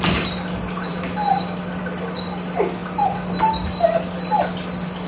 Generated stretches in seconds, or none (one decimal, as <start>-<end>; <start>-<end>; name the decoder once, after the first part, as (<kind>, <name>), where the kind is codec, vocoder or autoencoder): none

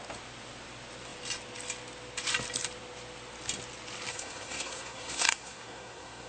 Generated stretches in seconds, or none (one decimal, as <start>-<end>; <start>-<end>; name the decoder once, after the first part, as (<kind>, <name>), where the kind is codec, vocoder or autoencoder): 4.1-6.3 (codec, SNAC)

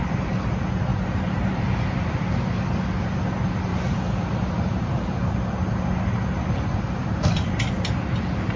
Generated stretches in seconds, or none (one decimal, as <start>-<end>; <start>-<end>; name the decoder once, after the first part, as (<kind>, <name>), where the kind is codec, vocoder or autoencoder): 0.9-2.2 (vocoder, BigVGAN v2); 3.7-5.3

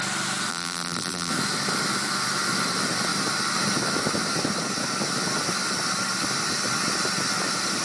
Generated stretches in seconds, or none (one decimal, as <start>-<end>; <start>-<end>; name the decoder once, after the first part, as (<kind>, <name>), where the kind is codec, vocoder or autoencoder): 0.5-1.3 (vocoder, BigVGAN v2)

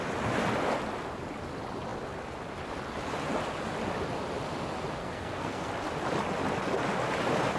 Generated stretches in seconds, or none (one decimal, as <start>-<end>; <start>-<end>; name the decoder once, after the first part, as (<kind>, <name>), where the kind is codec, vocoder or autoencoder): 5.0-5.7 (codec, SNAC)

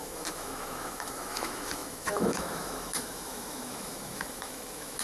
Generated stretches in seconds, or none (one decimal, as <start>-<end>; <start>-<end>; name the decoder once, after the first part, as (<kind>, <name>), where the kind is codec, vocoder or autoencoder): 0.0-5.0 (autoencoder, DAC-VAE)

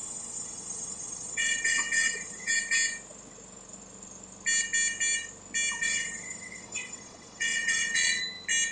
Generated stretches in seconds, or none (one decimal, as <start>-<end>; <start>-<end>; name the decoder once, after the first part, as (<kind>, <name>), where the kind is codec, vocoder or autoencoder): 0.0-2.5 (vocoder, WaveNeXt); 5.8-8.2